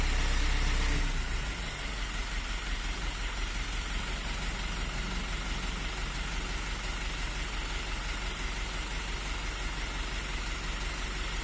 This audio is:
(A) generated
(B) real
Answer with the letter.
B